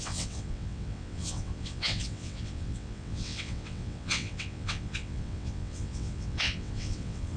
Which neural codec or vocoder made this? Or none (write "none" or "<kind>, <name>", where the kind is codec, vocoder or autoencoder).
vocoder, WaveNeXt